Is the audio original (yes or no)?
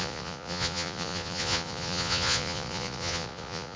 no